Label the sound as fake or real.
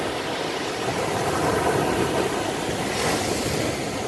real